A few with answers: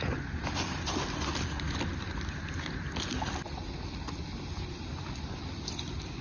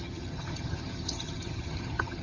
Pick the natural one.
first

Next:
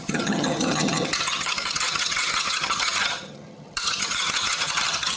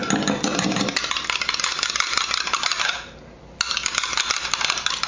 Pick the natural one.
second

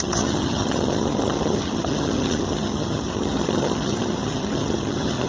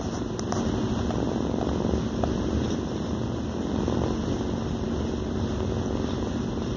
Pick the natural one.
second